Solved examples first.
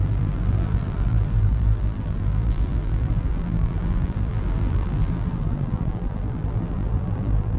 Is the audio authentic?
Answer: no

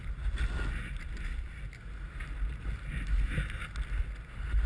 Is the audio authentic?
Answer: yes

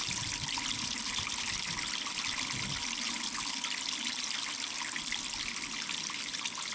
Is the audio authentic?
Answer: yes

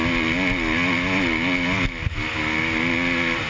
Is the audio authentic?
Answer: yes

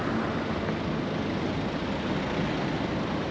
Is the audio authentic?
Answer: yes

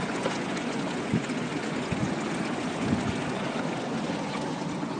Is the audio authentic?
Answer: no